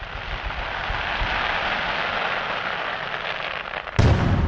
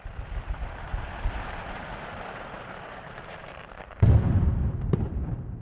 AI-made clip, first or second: second